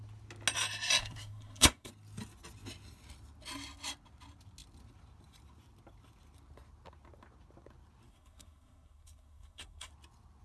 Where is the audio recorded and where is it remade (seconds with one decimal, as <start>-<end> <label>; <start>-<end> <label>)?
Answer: 0.0-1.0 recorded; 1.0-1.9 remade; 1.9-8.1 recorded; 8.1-9.9 remade; 9.9-10.4 recorded